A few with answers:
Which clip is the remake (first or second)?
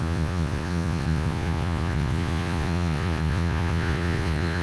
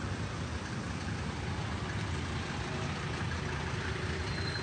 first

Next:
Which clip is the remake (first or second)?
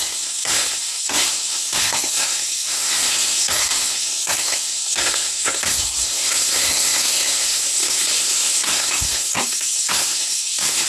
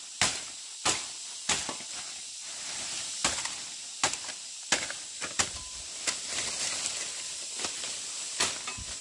first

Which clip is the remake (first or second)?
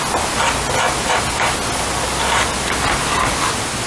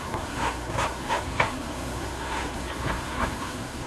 second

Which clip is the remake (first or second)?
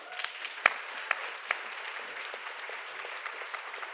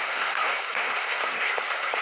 second